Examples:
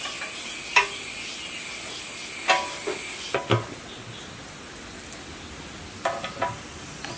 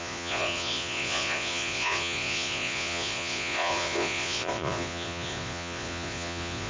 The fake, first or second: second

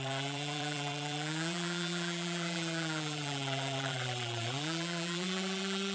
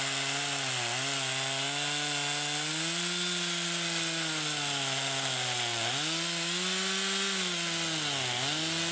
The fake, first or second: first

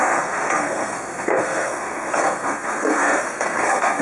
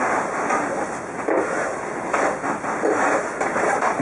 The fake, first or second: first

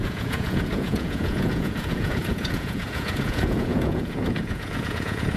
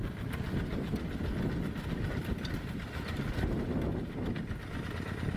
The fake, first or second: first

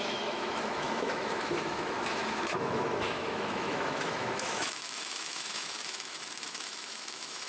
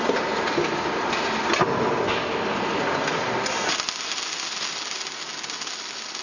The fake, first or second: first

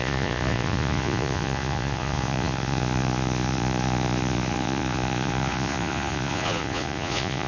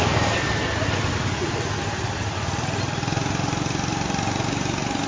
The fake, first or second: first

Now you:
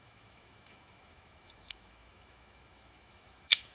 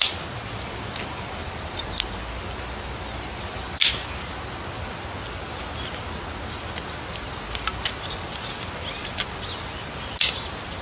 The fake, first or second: first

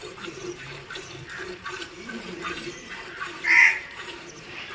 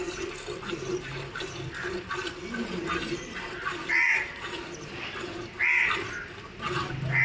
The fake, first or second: first